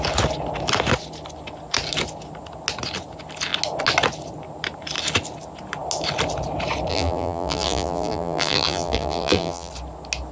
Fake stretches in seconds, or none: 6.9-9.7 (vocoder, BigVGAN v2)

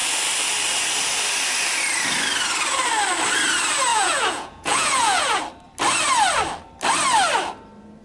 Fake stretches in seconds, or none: 3.9-5.4 (vocoder, Vocos)

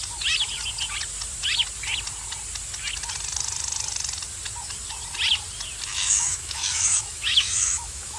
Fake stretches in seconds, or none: 5.9-8.2 (autoencoder, DAC-VAE)

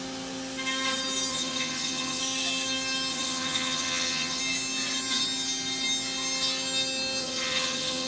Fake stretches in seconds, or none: 1.3-2.2 (vocoder, HiFi-GAN); 3.1-4.4; 7.2-8.1